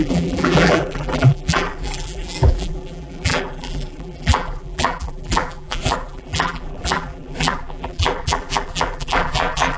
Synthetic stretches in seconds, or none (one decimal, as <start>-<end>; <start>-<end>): 0.0-9.8